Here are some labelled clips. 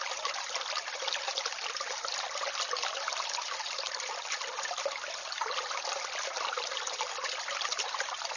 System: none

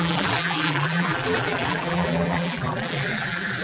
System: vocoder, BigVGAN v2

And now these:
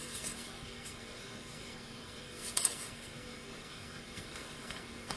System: codec, SNAC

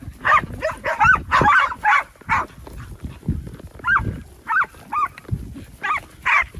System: none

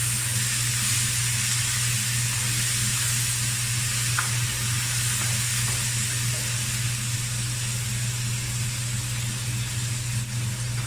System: none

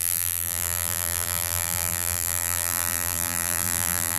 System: vocoder, BigVGAN v2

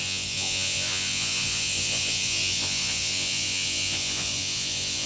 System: vocoder, Vocos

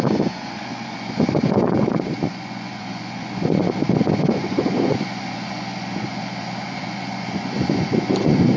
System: vocoder, Vocos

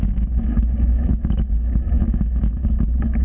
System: autoencoder, DAC-VAE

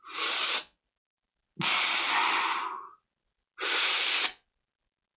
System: none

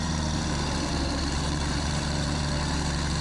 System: vocoder, BigVGAN v2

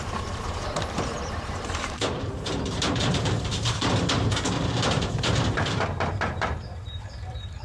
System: vocoder, BigVGAN v2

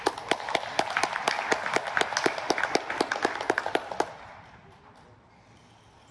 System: none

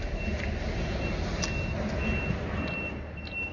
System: none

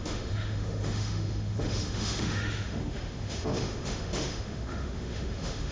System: autoencoder, DAC-VAE